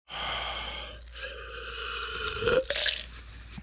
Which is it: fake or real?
real